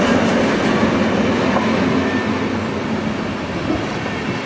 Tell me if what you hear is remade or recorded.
recorded